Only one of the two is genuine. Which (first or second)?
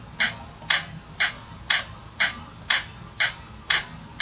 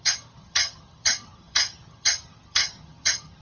first